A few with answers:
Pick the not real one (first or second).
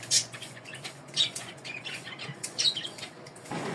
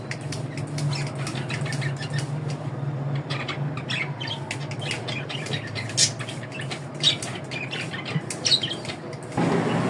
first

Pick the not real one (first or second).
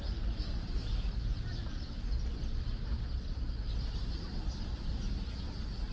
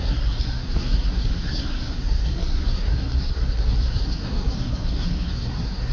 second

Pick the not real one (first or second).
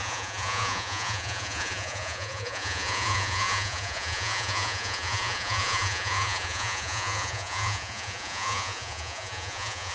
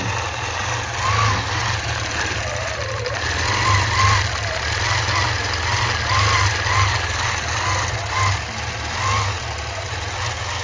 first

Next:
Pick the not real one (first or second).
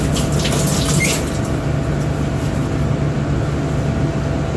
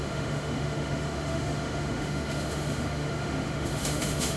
second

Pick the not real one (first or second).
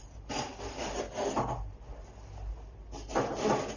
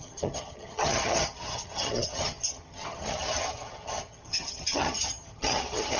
second